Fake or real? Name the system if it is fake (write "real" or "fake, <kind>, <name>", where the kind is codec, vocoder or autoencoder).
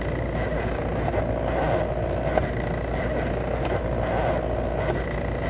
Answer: real